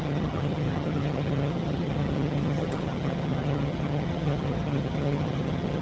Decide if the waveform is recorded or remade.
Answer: remade